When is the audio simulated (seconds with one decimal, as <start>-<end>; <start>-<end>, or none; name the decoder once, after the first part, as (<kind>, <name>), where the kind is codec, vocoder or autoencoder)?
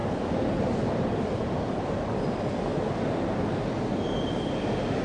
0.0-2.7 (vocoder, BigVGAN v2); 4.5-5.0